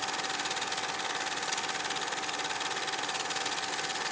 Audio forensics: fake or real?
real